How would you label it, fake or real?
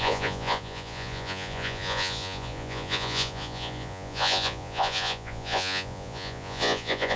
fake